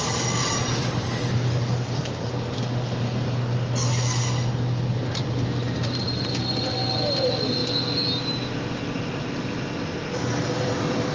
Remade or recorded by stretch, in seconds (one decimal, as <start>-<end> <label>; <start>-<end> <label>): 0.0-11.1 recorded